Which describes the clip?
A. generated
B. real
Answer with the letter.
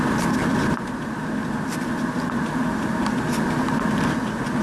B